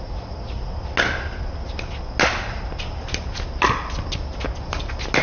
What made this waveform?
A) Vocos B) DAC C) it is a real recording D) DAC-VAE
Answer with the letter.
C